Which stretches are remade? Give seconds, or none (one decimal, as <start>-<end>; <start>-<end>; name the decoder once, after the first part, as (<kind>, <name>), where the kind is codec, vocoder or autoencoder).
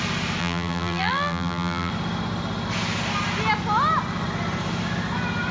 0.4-1.9 (vocoder, BigVGAN v2)